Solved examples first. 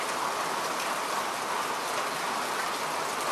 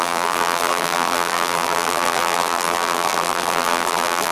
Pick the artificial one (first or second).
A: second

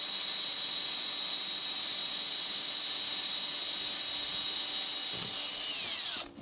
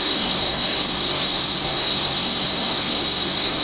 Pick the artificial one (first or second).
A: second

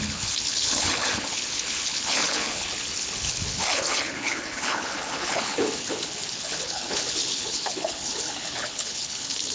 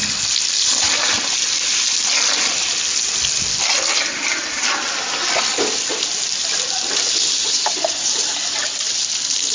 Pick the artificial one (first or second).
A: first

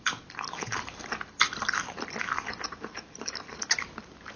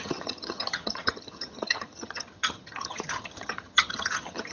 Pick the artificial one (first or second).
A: second